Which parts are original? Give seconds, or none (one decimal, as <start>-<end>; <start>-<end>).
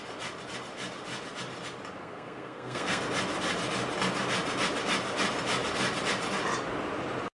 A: 0.0-2.0; 3.0-7.4